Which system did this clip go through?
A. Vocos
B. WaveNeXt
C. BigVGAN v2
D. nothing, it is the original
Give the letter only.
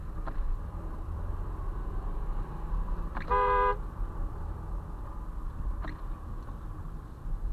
C